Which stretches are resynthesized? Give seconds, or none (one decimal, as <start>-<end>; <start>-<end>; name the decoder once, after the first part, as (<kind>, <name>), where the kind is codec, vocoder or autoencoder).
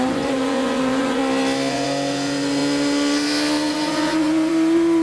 0.0-1.2 (vocoder, Vocos); 1.7-2.6; 3.7-5.0